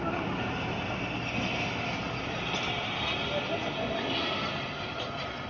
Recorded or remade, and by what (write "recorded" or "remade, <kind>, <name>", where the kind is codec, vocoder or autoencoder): recorded